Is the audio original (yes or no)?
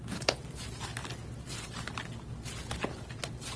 yes